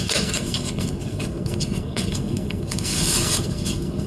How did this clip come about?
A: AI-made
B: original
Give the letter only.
A